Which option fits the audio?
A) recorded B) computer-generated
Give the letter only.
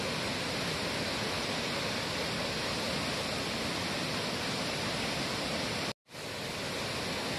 A